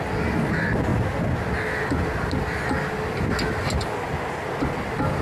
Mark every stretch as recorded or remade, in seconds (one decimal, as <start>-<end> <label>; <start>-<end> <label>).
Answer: 0.0-5.2 recorded